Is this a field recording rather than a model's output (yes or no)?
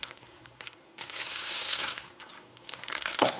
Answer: no